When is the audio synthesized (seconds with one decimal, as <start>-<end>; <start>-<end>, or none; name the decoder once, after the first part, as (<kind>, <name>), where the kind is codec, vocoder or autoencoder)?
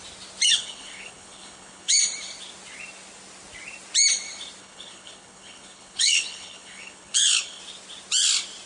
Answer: 0.5-2.0 (codec, HILCodec); 4.6-7.6